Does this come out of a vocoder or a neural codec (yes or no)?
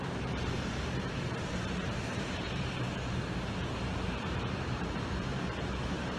yes